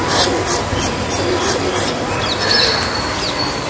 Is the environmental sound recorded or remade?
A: recorded